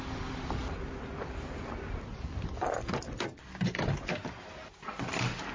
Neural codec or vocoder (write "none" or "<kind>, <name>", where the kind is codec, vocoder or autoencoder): none